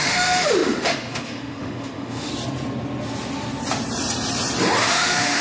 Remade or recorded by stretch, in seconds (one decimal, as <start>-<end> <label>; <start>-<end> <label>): 0.0-2.3 remade; 2.3-4.8 recorded; 4.8-5.4 remade